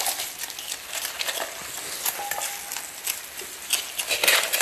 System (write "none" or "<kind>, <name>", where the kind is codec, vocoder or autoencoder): none